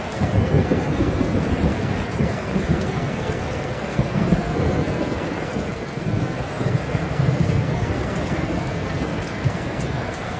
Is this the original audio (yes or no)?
no